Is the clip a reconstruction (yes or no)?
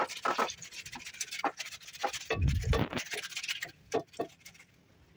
no